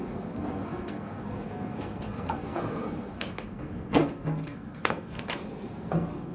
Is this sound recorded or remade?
remade